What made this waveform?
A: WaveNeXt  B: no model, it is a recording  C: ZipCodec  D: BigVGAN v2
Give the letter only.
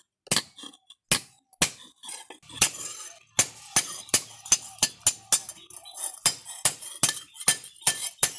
B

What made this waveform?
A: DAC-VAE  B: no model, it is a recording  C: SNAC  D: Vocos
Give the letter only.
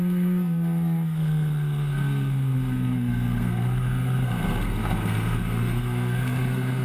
C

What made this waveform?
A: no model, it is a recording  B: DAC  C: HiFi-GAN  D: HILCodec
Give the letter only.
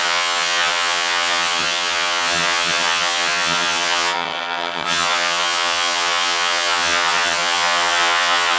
C